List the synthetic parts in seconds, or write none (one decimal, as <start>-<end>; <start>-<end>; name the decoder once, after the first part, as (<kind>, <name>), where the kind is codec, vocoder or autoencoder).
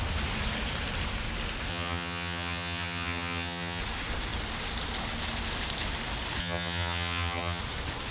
1.7-3.8 (vocoder, HiFi-GAN); 6.4-7.6